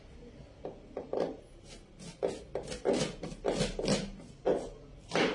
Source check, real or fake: real